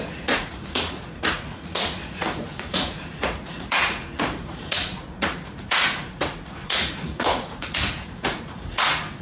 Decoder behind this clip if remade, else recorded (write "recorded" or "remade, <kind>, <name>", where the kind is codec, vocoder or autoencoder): remade, vocoder, Vocos